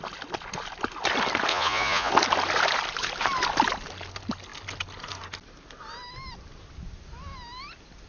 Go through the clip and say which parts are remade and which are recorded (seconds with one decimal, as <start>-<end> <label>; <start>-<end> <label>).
0.0-1.5 recorded; 1.5-2.1 remade; 2.1-8.1 recorded